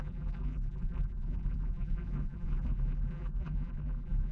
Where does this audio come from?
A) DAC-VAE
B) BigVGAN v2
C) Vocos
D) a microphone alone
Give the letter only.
B